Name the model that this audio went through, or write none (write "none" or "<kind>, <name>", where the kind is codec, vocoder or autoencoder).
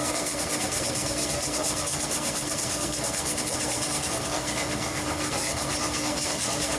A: codec, SNAC